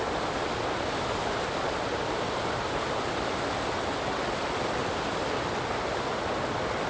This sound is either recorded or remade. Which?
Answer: recorded